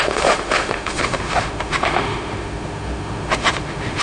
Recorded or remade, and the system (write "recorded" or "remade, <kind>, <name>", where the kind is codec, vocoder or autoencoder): remade, autoencoder, DAC-VAE